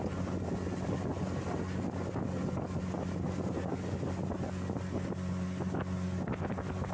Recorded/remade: recorded